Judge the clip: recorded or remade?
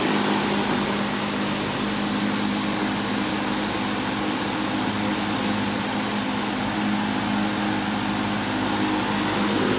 recorded